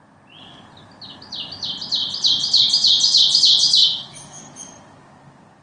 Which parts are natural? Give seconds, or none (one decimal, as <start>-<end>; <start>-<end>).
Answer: 0.0-3.8; 4.4-5.6

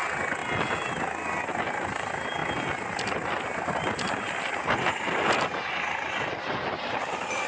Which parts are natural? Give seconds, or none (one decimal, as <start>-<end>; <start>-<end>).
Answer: 0.0-7.5

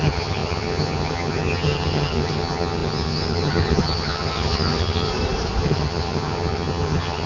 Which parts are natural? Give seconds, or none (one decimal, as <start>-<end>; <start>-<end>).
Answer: 5.1-5.6

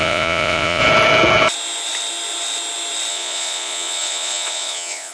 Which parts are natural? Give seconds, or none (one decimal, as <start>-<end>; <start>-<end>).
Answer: 0.8-3.1